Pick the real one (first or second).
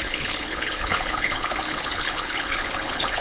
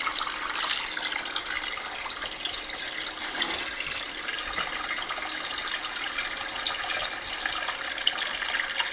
second